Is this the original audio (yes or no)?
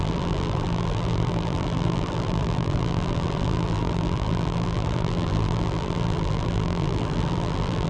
no